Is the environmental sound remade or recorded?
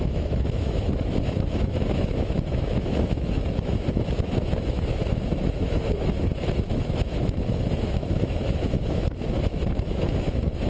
remade